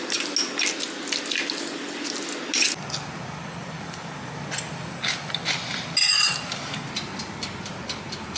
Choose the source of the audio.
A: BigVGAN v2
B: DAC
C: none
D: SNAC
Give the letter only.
C